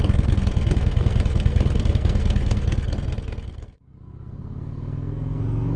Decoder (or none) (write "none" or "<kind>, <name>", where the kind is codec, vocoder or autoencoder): codec, SNAC